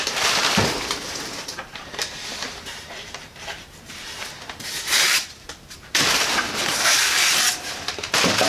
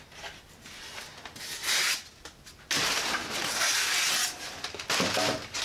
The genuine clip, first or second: second